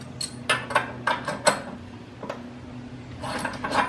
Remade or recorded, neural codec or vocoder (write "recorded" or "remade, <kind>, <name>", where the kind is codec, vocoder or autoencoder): recorded